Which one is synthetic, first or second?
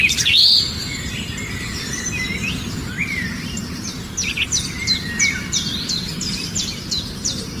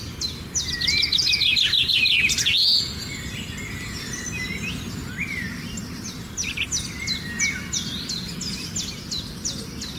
first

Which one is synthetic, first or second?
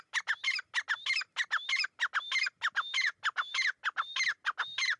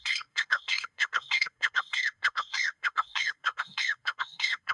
second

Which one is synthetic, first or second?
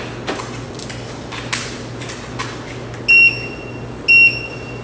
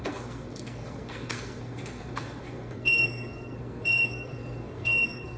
second